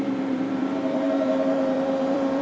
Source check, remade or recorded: remade